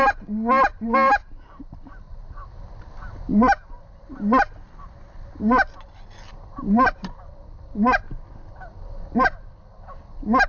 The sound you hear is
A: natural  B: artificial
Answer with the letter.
A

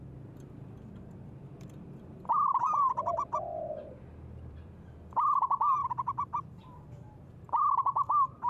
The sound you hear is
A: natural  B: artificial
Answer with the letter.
B